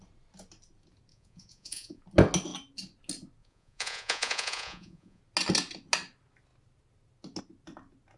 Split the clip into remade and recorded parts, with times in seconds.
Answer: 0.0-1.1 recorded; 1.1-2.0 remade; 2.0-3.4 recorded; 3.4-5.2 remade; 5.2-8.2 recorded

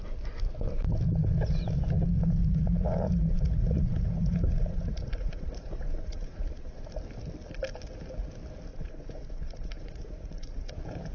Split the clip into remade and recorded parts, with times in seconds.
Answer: 0.0-2.4 recorded; 2.4-6.9 remade; 6.9-8.7 recorded; 8.7-10.7 remade; 10.7-11.1 recorded

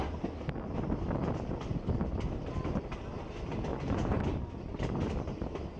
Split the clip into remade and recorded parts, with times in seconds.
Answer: 0.0-3.7 recorded; 3.7-4.2 remade; 4.2-5.8 recorded

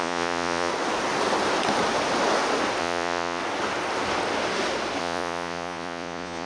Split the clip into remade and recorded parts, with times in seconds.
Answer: 0.0-0.7 remade; 0.7-2.8 recorded; 2.8-3.4 remade; 3.4-5.0 recorded; 5.0-6.5 remade

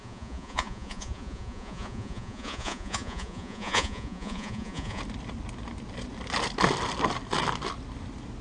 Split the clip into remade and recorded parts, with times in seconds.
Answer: 0.0-5.0 remade; 5.0-8.4 recorded